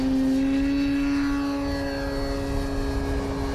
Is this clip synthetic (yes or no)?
no